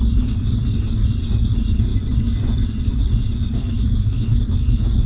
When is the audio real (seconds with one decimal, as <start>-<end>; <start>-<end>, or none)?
0.0-3.6; 4.4-5.1